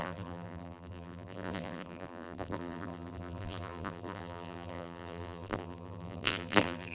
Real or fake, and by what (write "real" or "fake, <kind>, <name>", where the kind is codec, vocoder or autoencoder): fake, vocoder, BigVGAN v2